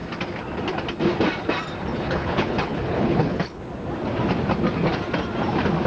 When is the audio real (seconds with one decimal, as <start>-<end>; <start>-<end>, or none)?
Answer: 0.0-1.9; 3.6-5.9